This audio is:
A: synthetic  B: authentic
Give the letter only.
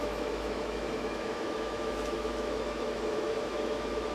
A